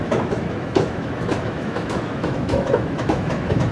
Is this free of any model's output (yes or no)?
no